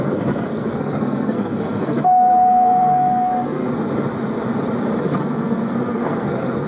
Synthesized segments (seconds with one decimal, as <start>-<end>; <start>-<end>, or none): 0.0-3.7; 5.0-6.7